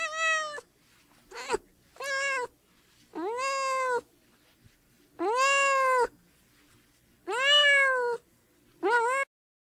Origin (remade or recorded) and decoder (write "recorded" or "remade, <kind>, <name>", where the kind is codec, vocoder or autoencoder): recorded